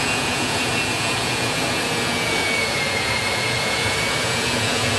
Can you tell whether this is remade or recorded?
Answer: remade